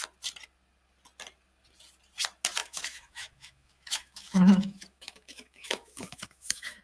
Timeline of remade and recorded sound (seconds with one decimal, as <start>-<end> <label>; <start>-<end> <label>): 0.0-2.6 recorded; 2.6-6.8 remade